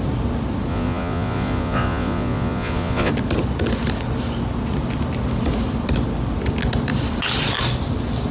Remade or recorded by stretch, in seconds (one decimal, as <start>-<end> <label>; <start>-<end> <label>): 0.0-0.7 recorded; 0.7-3.1 remade; 3.1-8.3 recorded